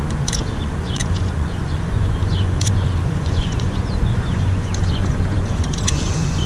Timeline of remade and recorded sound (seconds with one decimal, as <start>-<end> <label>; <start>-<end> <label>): 0.0-6.5 remade